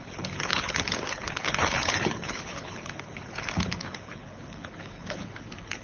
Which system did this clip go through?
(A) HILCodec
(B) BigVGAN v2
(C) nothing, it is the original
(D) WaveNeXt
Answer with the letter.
A